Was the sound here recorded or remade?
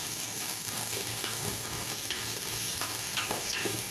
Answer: remade